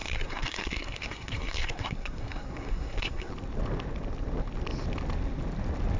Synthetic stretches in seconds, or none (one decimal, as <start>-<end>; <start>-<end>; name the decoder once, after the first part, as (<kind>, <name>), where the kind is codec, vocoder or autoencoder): 0.0-3.3 (codec, SNAC)